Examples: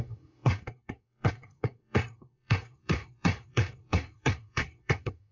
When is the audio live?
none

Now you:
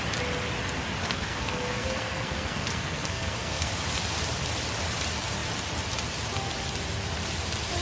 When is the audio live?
0.0-1.0; 3.7-7.8

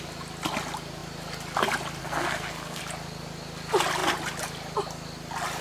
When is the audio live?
0.0-2.0; 2.8-5.6

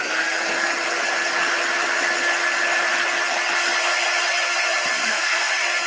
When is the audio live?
0.0-5.0; 5.5-5.9

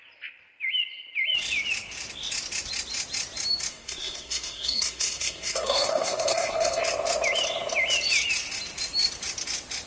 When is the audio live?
0.0-3.7; 6.8-9.9

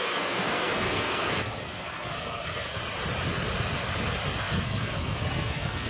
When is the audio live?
2.8-4.4